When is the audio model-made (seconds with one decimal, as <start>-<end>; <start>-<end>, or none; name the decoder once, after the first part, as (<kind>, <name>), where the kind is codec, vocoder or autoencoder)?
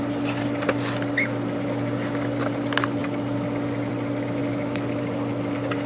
none